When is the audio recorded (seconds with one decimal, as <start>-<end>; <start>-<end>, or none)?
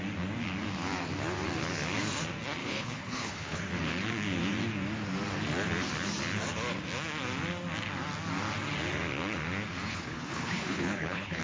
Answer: 0.0-2.6; 3.6-9.9